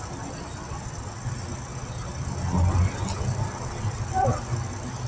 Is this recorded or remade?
recorded